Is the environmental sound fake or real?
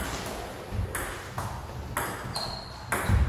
real